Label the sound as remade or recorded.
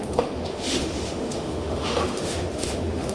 remade